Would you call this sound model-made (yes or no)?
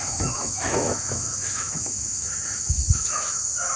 yes